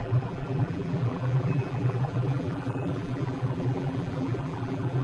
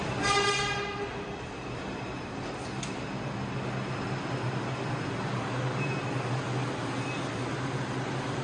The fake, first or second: first